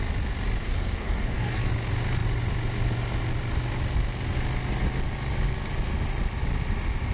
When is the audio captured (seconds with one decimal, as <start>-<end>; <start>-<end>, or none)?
0.0-0.6; 1.7-7.1